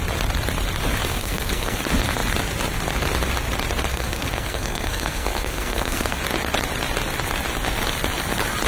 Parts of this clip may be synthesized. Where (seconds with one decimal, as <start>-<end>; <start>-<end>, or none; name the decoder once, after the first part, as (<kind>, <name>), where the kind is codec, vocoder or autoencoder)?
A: 1.1-1.8 (codec, SNAC); 3.9-6.2